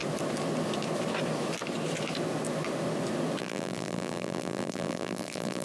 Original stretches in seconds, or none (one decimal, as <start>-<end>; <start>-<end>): 0.0-3.4